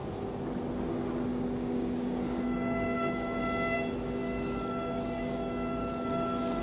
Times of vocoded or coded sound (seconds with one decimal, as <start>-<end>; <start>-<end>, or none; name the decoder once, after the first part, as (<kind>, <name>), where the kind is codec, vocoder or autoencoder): 1.3-3.4 (codec, DAC); 4.2-6.6